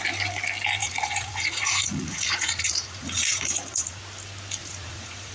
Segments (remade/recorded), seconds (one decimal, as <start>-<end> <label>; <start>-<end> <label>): 0.0-0.8 recorded; 0.8-4.0 remade; 4.0-4.6 recorded; 4.6-5.3 remade